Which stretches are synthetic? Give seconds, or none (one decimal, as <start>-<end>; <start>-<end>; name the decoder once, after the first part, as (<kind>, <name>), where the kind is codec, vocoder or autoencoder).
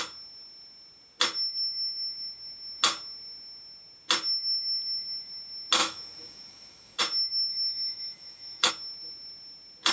5.8-7.0 (autoencoder, DAC-VAE); 7.5-8.7